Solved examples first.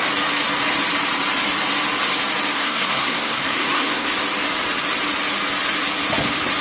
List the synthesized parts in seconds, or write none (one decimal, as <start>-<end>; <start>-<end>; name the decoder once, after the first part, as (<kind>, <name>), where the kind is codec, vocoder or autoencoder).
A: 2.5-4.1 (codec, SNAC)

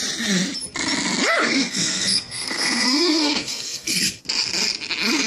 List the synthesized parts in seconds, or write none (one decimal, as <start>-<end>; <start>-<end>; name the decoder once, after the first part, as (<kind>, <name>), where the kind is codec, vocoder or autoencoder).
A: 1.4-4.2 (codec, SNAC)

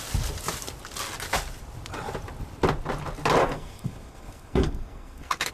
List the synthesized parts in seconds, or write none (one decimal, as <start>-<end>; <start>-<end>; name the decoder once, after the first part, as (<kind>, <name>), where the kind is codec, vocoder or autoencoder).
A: 3.4-5.5 (codec, SNAC)